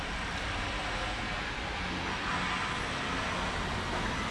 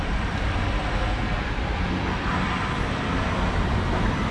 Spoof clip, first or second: second